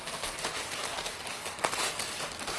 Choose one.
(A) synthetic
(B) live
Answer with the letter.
B